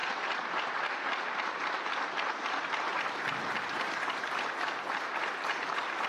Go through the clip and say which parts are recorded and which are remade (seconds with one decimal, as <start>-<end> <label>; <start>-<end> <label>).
0.0-6.1 recorded